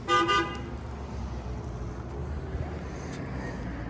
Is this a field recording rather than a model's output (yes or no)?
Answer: yes